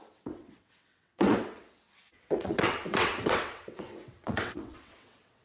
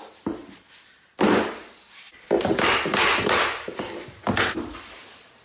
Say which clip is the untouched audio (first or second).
second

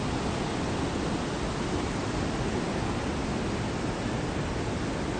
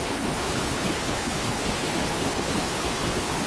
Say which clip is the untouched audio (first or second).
first